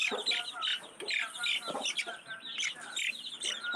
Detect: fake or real real